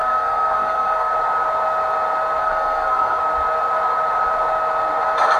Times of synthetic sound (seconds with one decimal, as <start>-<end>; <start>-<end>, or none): 0.0-1.1; 2.4-3.2